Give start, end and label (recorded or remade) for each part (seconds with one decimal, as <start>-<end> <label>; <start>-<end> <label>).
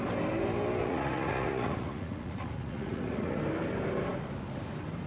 0.0-0.8 recorded; 0.8-3.4 remade; 3.4-5.1 recorded